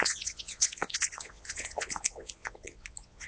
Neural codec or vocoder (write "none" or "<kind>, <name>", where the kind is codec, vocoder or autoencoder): vocoder, Vocos